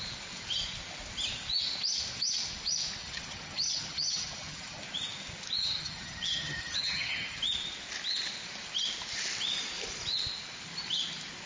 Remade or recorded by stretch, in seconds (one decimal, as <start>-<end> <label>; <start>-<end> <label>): 0.0-3.0 recorded; 3.0-4.8 remade; 4.8-5.6 recorded; 5.6-7.4 remade; 7.4-11.5 recorded